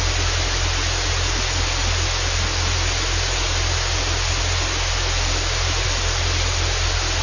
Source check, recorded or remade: recorded